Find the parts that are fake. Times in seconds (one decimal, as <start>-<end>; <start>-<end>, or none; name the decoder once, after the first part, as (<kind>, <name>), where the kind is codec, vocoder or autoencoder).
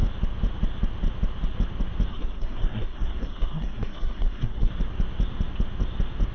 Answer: 2.1-4.7 (codec, SNAC)